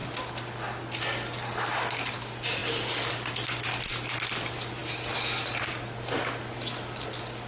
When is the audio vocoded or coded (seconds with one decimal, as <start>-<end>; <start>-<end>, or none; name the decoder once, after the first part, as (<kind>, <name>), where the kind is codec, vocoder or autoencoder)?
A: none